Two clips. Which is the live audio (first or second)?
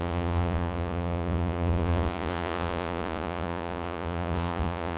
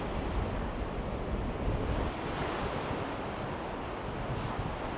second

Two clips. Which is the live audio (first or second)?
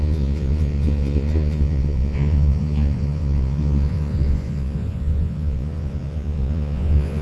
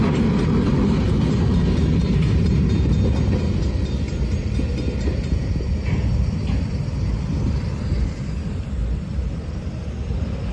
second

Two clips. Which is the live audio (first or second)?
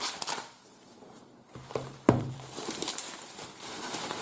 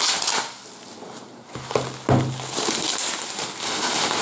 second